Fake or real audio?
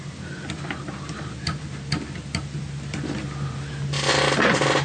real